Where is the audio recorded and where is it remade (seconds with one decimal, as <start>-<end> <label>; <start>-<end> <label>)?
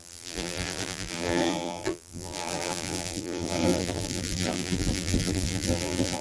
0.0-6.2 remade